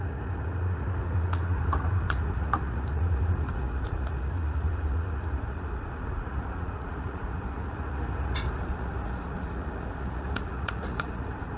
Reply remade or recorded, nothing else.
remade